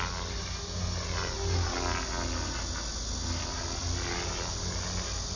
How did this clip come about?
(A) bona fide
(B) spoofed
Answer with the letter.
A